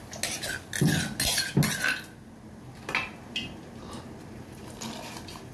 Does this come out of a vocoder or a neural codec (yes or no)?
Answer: no